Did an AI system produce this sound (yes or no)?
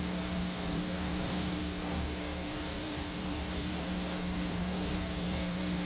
yes